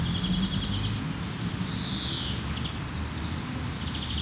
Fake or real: real